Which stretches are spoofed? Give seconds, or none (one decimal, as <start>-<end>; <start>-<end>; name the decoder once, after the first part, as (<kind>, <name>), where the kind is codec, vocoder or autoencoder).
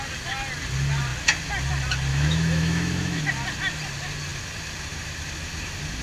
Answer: 2.1-3.2 (autoencoder, DAC-VAE)